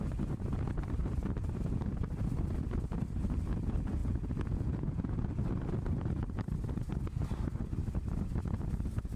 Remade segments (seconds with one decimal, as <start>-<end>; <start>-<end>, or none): 4.0-5.2